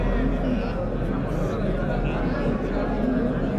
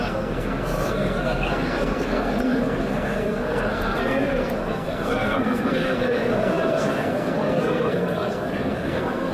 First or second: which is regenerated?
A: second